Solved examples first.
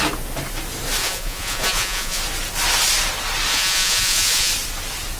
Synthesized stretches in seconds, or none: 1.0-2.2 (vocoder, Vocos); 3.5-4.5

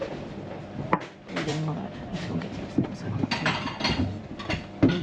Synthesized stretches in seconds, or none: none

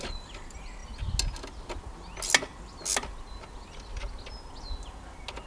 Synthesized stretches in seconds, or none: none

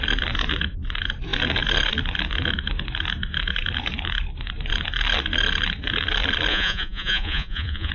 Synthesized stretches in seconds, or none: 6.5-7.9 (vocoder, Vocos)

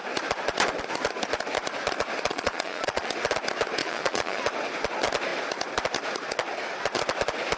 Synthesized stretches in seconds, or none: 2.3-3.1 (vocoder, Vocos); 3.8-4.4